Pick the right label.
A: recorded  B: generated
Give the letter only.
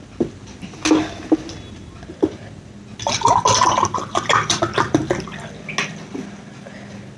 A